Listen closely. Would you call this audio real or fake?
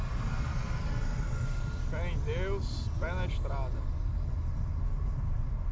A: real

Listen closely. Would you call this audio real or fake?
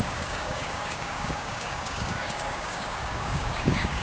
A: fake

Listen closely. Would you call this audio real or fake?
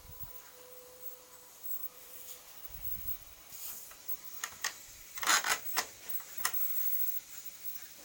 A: fake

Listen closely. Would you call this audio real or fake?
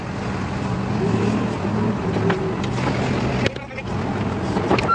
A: real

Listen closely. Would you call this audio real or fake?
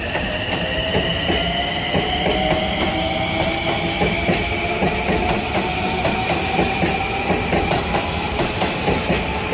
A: real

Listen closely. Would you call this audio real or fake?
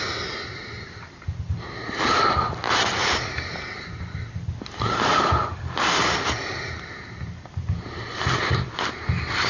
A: real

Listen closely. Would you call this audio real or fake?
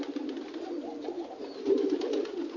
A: real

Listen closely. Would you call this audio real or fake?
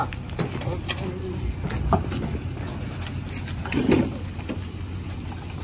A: real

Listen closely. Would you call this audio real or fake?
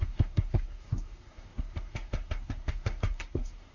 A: fake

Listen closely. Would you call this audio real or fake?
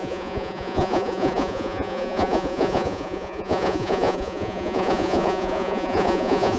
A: fake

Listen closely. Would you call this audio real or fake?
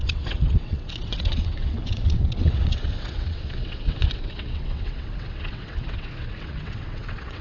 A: fake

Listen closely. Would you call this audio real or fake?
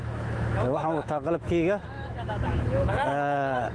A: fake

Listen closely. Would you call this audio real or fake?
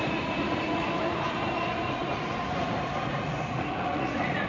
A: fake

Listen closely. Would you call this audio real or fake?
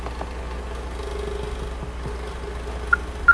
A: real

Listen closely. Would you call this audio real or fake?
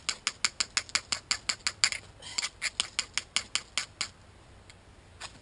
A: real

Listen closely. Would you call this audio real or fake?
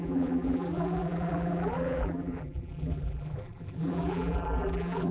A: fake